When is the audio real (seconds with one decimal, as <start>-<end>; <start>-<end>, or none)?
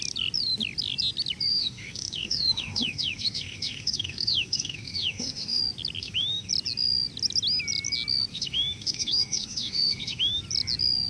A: 0.0-1.5; 5.6-6.0; 6.5-8.3; 10.4-11.1